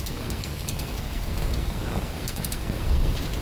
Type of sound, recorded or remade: remade